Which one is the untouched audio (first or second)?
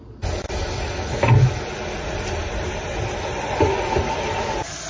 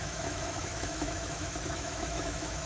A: first